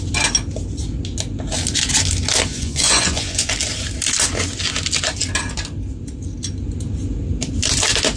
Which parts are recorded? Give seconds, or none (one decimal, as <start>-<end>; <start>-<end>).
0.0-2.5; 3.5-8.2